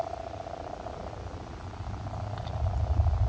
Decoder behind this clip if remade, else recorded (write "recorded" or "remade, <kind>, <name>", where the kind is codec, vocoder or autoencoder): recorded